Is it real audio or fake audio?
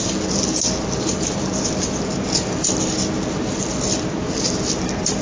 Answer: real